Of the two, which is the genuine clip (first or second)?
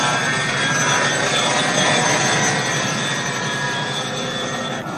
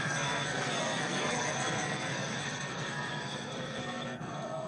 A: first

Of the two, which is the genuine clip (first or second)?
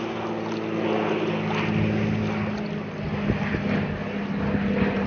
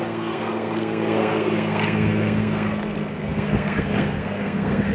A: first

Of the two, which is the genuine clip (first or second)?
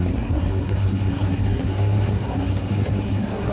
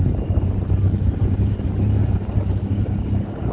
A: second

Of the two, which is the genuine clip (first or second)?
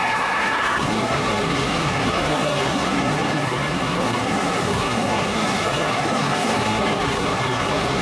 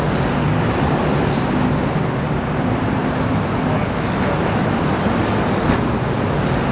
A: second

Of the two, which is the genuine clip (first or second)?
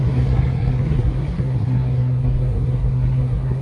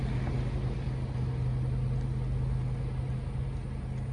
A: second